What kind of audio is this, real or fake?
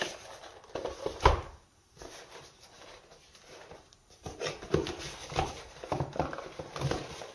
real